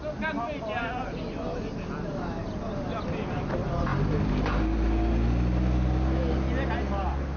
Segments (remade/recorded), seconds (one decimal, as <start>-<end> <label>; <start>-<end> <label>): 0.0-7.4 recorded